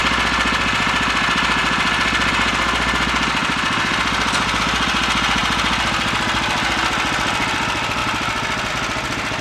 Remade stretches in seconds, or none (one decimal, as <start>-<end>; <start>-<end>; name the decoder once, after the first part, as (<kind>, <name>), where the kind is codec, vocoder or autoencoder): none